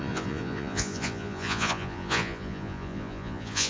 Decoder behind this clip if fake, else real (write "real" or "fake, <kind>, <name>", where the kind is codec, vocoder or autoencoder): fake, vocoder, Vocos